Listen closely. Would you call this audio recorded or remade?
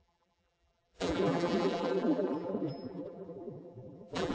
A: remade